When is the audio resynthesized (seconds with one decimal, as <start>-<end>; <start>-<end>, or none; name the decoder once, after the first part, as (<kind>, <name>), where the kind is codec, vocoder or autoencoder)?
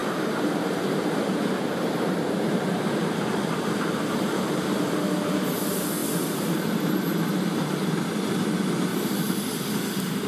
0.0-4.6 (vocoder, BigVGAN v2); 8.9-9.4